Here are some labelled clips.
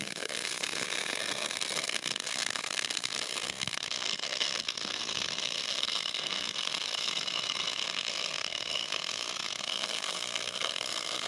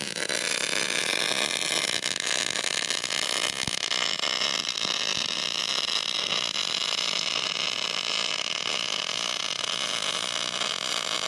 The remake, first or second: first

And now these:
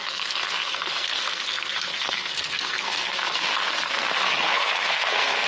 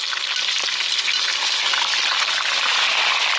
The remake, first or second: first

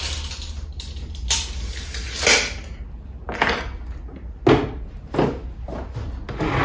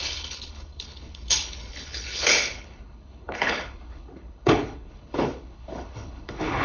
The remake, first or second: second